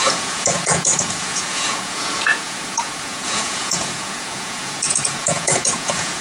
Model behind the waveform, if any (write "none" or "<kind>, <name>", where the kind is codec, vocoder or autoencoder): vocoder, Vocos